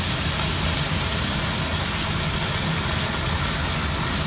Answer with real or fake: real